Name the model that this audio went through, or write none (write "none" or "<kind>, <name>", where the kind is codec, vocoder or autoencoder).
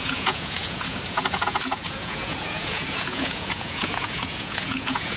vocoder, Vocos